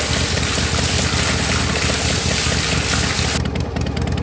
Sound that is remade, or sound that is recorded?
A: recorded